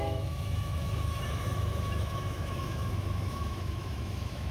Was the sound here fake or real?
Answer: fake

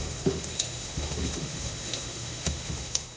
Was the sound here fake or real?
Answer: fake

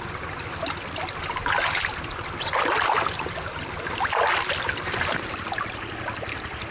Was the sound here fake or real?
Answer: real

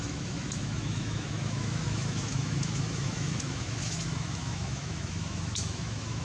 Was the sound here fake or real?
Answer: fake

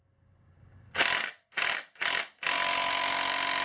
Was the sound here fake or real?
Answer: real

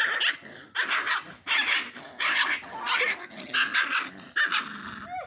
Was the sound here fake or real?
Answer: real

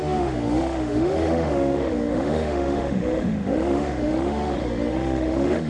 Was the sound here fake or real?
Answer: fake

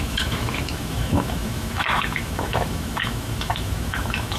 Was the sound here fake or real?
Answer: fake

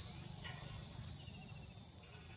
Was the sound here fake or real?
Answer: real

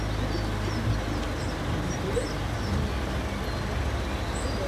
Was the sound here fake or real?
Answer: real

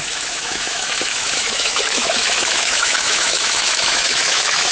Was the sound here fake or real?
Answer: fake